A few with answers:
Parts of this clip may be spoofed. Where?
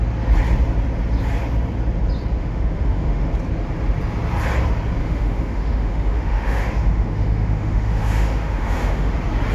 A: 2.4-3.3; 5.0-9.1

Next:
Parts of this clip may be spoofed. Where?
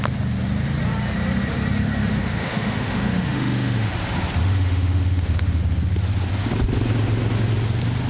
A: 2.1-3.9; 4.4-5.6